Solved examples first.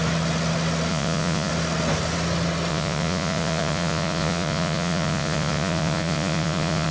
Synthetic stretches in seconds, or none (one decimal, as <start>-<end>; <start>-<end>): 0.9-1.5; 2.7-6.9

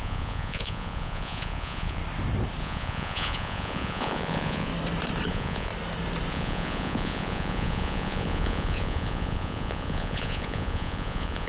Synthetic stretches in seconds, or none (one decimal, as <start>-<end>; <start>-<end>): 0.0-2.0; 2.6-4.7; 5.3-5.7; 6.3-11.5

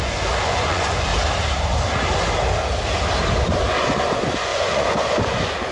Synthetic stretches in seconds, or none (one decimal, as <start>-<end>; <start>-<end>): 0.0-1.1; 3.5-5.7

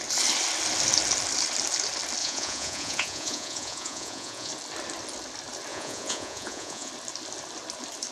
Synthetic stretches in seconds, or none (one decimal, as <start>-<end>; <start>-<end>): 2.2-4.5; 5.7-6.9

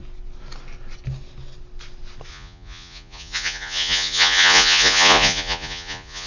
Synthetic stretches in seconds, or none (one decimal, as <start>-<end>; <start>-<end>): 2.3-6.3

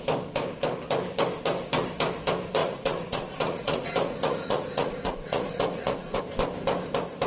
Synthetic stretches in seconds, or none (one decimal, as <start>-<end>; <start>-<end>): 2.6-6.2

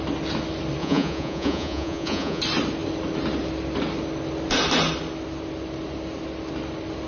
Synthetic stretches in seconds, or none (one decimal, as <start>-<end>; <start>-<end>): 0.8-2.4